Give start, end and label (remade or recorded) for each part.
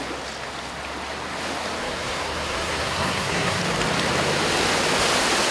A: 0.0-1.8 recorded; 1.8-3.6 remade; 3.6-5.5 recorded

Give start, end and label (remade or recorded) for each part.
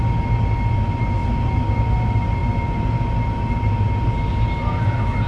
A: 0.0-5.3 recorded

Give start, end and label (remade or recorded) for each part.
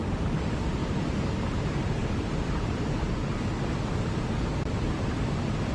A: 0.0-5.7 recorded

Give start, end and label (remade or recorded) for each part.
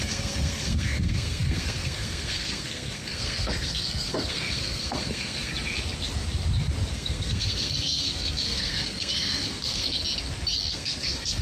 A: 0.0-5.5 remade; 5.5-6.9 recorded; 6.9-10.0 remade; 10.0-10.7 recorded; 10.7-11.4 remade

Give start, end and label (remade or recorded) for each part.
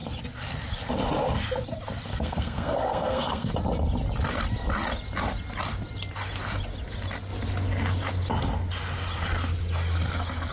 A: 0.0-2.1 recorded; 2.1-3.5 remade; 3.5-10.5 recorded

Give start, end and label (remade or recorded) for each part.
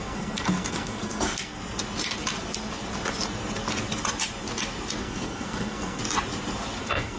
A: 0.0-1.6 remade; 1.6-5.0 recorded; 5.0-6.0 remade; 6.0-6.8 recorded; 6.8-7.2 remade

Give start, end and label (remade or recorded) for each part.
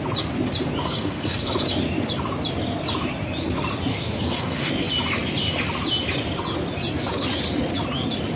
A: 0.0-0.8 recorded; 0.8-1.5 remade; 1.5-3.9 recorded; 3.9-4.7 remade; 4.7-8.4 recorded